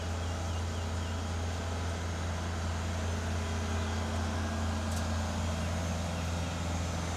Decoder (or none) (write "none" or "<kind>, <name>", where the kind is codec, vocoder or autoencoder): none